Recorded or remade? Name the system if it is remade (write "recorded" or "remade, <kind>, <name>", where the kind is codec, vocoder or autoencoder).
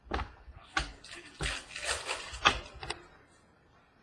recorded